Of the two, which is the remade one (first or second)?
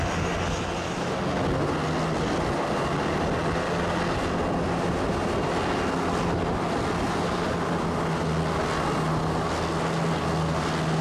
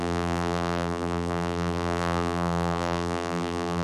second